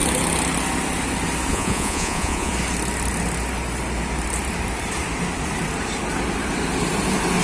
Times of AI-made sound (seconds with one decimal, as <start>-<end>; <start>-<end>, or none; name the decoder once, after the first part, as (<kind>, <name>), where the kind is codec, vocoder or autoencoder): 1.5-2.5 (vocoder, Vocos)